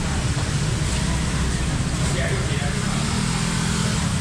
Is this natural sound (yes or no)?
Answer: yes